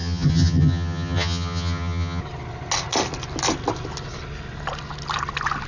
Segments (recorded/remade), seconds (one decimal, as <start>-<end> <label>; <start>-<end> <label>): 0.0-2.2 remade; 2.2-5.7 recorded